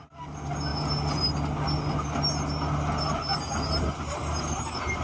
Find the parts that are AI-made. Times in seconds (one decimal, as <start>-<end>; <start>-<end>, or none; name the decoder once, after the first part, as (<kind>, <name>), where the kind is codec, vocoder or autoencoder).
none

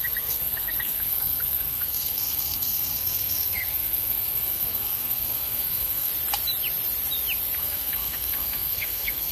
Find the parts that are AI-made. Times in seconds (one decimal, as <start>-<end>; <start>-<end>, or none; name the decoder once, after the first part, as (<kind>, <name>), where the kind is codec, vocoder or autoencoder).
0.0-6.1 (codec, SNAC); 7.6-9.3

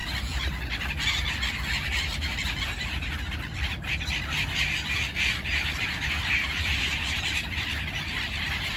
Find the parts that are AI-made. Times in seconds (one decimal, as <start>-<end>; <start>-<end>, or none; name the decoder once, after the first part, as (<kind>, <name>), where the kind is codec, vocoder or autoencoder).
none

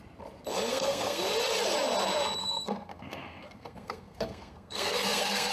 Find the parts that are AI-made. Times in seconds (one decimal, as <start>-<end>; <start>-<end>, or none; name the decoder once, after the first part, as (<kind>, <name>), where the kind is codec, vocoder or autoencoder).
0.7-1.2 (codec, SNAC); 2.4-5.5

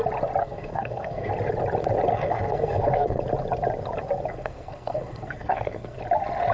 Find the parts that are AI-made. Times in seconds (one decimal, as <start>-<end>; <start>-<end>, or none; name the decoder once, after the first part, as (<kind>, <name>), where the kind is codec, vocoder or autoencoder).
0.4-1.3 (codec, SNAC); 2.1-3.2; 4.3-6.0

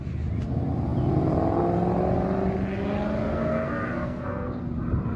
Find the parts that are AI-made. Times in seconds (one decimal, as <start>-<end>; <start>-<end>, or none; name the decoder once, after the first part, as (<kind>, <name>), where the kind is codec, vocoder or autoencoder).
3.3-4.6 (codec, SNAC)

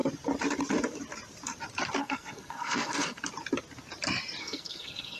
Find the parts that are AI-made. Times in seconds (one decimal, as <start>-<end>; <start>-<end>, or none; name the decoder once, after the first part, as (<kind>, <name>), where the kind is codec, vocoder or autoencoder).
2.0-3.2 (codec, SNAC); 4.4-5.2

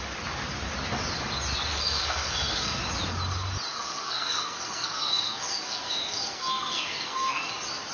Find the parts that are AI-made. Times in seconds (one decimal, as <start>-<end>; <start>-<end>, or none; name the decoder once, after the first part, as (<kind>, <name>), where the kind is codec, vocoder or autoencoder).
1.7-2.8 (codec, SNAC); 3.7-7.5